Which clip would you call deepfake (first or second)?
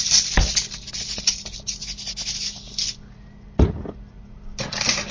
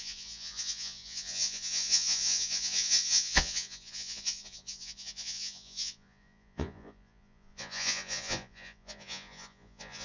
second